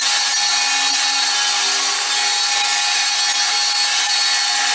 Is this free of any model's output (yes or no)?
yes